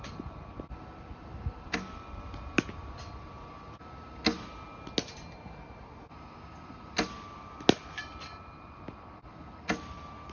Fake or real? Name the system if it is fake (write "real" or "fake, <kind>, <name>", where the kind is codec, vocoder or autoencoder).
real